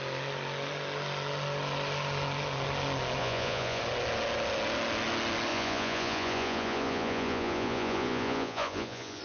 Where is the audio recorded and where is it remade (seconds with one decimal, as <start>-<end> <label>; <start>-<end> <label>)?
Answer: 0.0-3.2 recorded; 3.2-3.8 remade; 3.8-5.5 recorded; 5.5-9.2 remade